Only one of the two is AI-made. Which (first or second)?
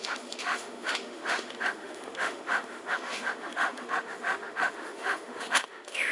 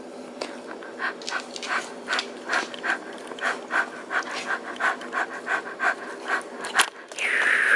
first